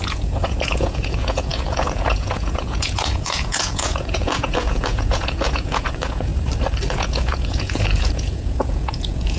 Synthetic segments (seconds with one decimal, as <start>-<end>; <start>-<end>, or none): 0.0-6.3; 6.9-9.4